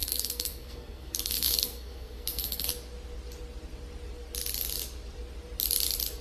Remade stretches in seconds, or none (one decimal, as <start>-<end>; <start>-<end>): 0.0-2.7